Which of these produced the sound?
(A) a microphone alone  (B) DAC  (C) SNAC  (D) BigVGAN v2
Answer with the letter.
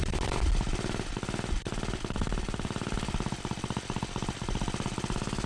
A